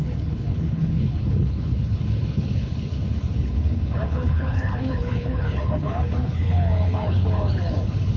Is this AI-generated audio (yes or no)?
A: yes